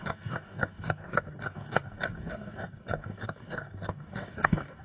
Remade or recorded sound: remade